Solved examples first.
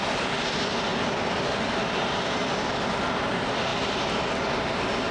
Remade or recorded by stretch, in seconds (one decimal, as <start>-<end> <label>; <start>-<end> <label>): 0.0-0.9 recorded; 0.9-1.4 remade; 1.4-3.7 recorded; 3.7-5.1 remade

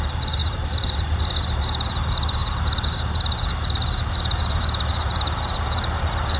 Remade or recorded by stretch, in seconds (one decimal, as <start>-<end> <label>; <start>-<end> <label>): 0.0-0.4 recorded; 0.4-1.2 remade; 1.2-6.4 recorded

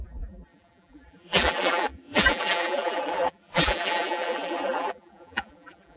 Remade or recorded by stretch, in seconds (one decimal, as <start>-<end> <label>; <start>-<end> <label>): 0.0-6.0 remade

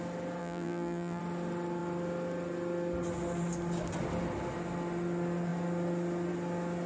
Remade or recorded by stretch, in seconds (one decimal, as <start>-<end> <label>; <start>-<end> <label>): 0.0-0.4 recorded; 0.4-1.2 remade; 1.2-6.9 recorded